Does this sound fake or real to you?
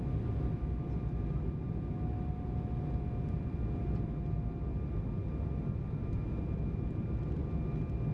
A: real